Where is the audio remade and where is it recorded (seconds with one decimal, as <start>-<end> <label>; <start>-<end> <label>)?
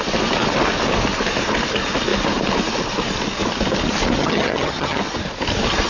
0.0-4.2 recorded; 4.2-5.0 remade; 5.0-5.9 recorded